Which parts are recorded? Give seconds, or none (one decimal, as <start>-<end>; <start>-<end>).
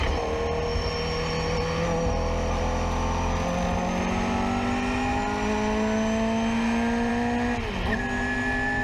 0.0-8.8